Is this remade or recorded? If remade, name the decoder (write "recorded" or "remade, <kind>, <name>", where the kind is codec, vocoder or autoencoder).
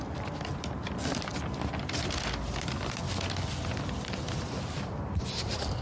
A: recorded